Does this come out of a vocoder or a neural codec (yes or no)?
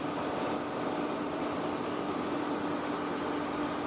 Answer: no